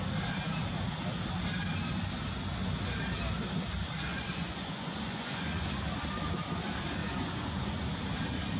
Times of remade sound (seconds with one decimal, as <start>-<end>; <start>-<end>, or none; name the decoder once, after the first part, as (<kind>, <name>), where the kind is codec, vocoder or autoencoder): 4.1-5.7 (vocoder, Vocos); 7.0-7.8